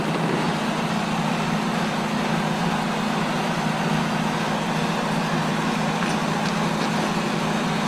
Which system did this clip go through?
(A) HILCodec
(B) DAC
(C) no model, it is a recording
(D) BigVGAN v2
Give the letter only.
C